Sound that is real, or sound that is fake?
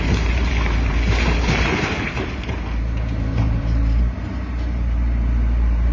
fake